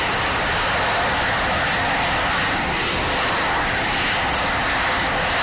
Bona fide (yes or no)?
yes